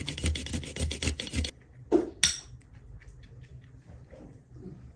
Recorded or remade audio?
recorded